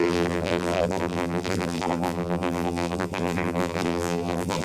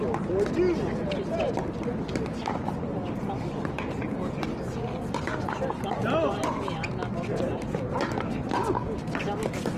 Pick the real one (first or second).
second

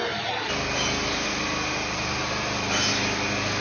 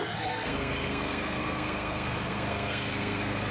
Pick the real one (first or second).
first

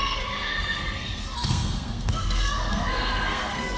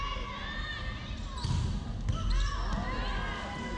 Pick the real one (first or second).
second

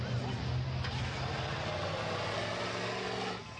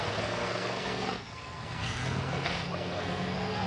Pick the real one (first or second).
first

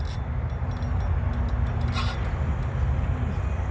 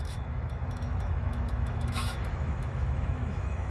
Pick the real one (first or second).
first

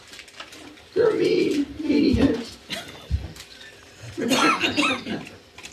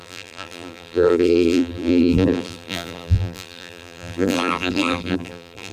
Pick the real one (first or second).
first